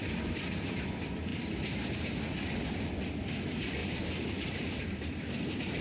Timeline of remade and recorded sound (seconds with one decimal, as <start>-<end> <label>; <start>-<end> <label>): 0.0-0.8 remade; 0.8-1.3 recorded; 1.3-2.1 remade; 2.1-3.8 recorded; 3.8-4.8 remade; 4.8-5.8 recorded